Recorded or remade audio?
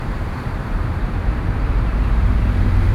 remade